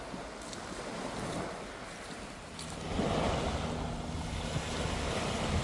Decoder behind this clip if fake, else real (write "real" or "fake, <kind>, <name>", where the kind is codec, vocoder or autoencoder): real